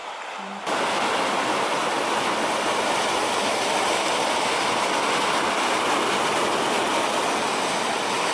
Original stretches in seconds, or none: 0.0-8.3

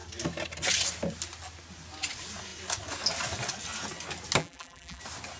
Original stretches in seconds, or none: 0.0-4.4; 5.0-5.4

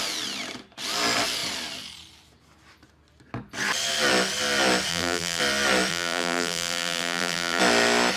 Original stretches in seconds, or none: 0.0-4.9; 5.4-5.9; 7.6-8.2

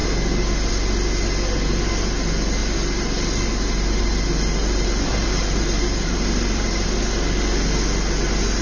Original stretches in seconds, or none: 0.7-2.6; 7.0-8.6

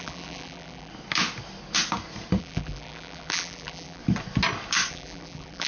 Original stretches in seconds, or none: 0.9-2.4; 4.0-4.9